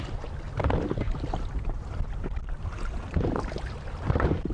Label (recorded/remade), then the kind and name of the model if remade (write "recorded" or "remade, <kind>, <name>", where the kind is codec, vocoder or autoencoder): remade, vocoder, BigVGAN v2